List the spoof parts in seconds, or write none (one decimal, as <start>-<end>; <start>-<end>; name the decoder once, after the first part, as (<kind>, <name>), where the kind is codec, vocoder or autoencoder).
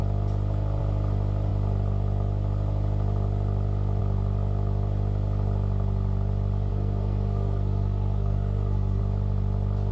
6.7-9.0 (codec, SNAC)